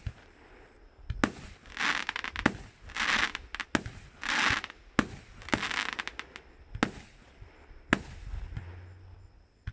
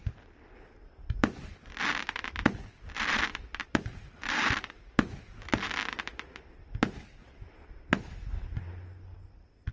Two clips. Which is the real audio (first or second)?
first